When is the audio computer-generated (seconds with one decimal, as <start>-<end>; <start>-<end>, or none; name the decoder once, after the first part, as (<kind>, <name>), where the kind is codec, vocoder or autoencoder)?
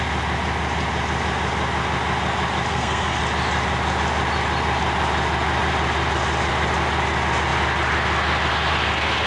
2.7-3.2 (codec, SNAC)